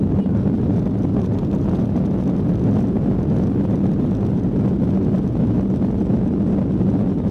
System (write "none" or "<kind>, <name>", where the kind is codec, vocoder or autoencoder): none